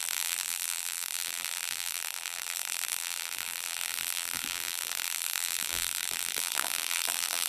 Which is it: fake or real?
fake